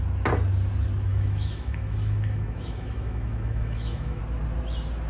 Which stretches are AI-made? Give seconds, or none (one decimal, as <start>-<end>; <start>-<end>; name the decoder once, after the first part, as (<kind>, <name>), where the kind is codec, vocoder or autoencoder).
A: 1.1-4.2 (autoencoder, DAC-VAE)